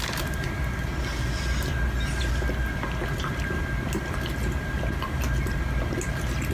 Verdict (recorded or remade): recorded